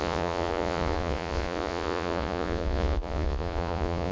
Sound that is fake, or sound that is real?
fake